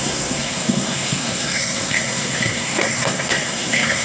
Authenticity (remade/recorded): remade